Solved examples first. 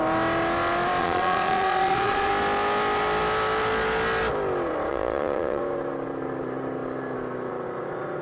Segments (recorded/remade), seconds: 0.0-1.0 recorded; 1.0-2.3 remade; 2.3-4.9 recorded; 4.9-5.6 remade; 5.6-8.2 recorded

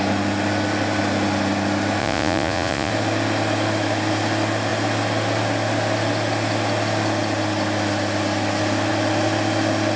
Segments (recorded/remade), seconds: 0.0-2.0 recorded; 2.0-2.9 remade; 2.9-10.0 recorded

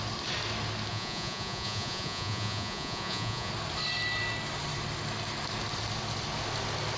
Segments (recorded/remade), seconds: 0.0-0.9 recorded; 0.9-3.5 remade; 3.5-7.0 recorded

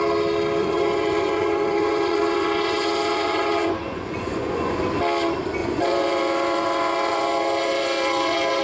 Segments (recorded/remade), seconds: 0.0-0.6 recorded; 0.6-4.8 remade; 4.8-5.6 recorded; 5.6-8.6 remade

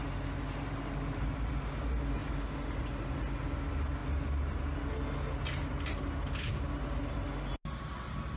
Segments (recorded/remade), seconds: 0.0-8.4 recorded

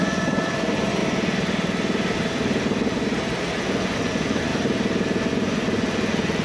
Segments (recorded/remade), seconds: 0.0-1.0 remade; 1.0-3.6 recorded; 3.6-4.5 remade; 4.5-5.3 recorded; 5.3-6.4 remade

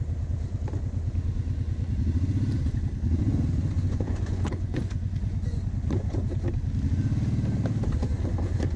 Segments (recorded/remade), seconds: 0.0-3.2 recorded; 3.2-6.2 remade; 6.2-8.8 recorded

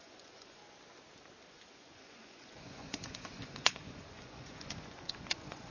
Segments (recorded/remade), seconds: 0.0-0.6 remade; 0.6-1.5 recorded; 1.5-5.7 remade